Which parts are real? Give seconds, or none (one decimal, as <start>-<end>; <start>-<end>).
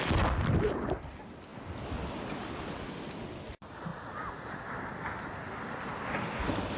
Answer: 0.0-6.8